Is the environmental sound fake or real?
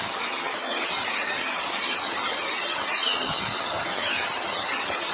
fake